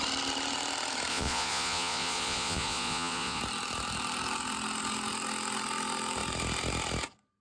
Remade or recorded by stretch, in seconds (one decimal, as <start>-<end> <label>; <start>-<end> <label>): 0.0-1.1 recorded; 1.1-3.4 remade; 3.4-7.4 recorded